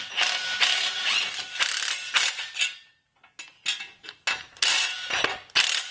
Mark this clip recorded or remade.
recorded